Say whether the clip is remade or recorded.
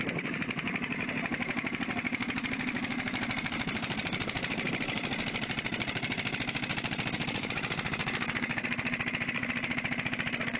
remade